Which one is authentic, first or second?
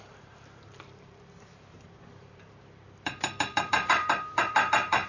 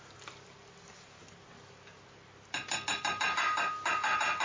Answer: second